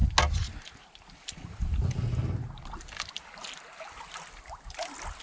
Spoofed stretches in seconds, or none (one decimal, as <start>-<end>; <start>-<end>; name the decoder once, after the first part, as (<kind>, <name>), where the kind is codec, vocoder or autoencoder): none